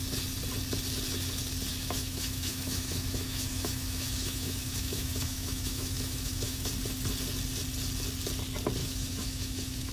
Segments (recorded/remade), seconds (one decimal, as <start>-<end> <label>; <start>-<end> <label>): 0.0-1.7 recorded; 1.7-6.7 remade; 6.7-8.8 recorded; 8.8-9.9 remade